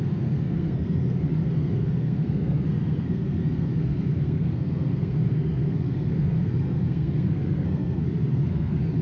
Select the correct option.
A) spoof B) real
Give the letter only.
A